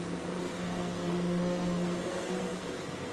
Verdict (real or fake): fake